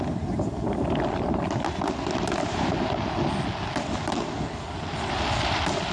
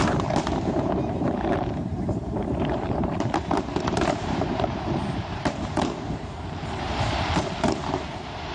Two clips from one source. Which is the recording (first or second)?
first